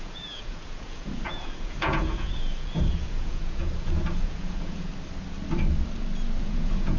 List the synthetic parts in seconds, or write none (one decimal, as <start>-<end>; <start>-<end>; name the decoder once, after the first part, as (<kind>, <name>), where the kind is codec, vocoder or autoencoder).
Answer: 0.0-4.9 (vocoder, Vocos); 6.4-7.0